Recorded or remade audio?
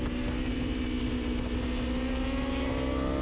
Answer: recorded